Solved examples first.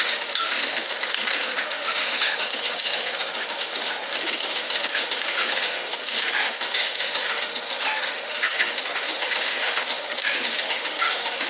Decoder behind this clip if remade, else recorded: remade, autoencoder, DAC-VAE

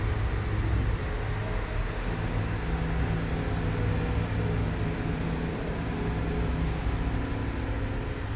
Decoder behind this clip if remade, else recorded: recorded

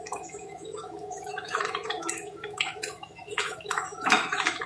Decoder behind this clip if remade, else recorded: remade, autoencoder, DAC-VAE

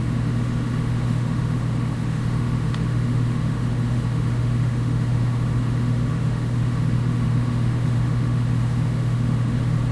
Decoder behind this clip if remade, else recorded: remade, autoencoder, DAC-VAE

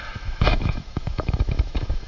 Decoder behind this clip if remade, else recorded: remade, autoencoder, DAC-VAE